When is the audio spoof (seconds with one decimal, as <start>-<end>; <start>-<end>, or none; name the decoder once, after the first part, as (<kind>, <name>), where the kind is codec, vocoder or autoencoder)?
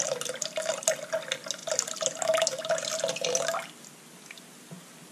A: none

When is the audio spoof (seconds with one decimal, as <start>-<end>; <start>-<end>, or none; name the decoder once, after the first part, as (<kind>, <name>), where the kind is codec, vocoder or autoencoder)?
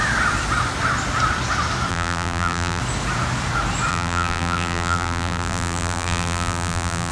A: 1.9-2.8 (vocoder, BigVGAN v2); 3.9-7.1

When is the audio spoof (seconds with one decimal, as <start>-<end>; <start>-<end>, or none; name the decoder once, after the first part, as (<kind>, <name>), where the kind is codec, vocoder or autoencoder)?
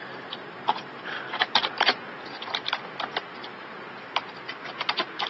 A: 0.0-5.3 (vocoder, BigVGAN v2)